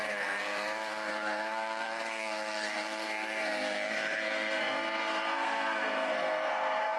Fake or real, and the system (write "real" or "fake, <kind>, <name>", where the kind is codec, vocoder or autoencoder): fake, codec, SNAC